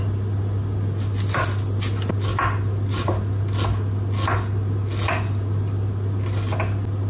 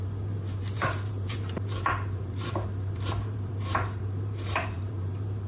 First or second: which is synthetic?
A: second